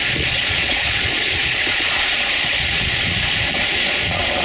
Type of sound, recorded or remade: remade